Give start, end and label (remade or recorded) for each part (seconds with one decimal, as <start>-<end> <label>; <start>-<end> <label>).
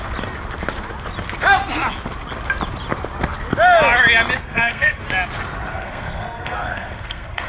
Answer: 0.0-4.4 recorded; 4.4-5.0 remade; 5.0-5.7 recorded; 5.7-7.5 remade